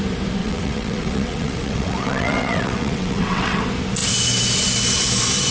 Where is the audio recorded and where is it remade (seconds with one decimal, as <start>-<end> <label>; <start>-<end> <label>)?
0.0-0.4 recorded; 0.4-3.6 remade; 3.6-5.5 recorded